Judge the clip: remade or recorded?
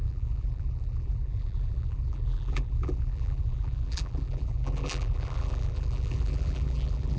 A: remade